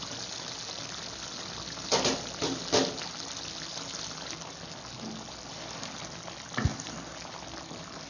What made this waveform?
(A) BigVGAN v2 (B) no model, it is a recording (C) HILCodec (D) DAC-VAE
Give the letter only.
B